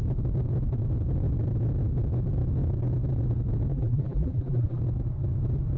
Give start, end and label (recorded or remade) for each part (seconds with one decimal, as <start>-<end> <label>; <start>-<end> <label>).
0.0-3.7 recorded; 3.7-4.8 remade; 4.8-5.8 recorded